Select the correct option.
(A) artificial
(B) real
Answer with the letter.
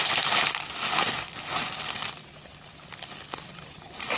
B